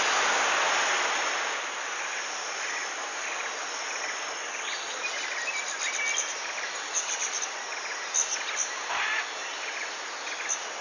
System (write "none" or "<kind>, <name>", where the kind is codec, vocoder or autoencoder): none